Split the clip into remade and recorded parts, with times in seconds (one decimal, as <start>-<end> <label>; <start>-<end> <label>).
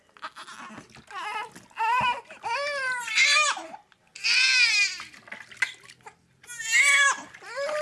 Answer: 0.0-7.8 recorded